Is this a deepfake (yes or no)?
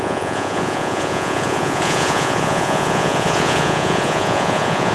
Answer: yes